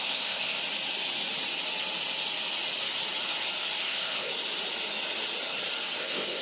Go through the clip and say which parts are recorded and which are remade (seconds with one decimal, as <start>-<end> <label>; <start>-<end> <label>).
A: 0.0-0.6 remade; 0.6-3.8 recorded; 3.8-4.3 remade; 4.3-6.0 recorded; 6.0-6.4 remade